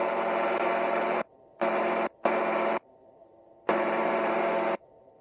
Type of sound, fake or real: fake